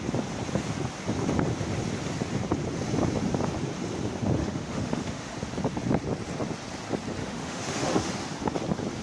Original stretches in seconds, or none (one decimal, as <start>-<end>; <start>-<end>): 0.0-4.4; 5.3-7.2; 8.1-9.0